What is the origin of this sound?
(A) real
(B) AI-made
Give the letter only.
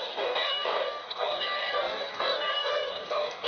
B